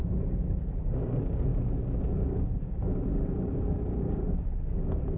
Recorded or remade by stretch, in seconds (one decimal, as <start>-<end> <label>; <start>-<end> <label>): 0.0-5.2 remade